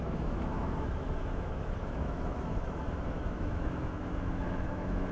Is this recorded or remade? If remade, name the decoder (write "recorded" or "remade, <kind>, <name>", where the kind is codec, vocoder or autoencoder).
remade, autoencoder, DAC-VAE